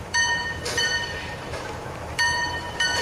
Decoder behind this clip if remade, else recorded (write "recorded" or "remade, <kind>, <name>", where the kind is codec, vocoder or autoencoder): remade, vocoder, BigVGAN v2